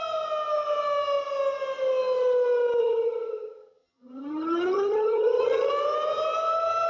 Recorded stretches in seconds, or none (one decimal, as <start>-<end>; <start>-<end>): 0.0-2.8; 5.7-6.9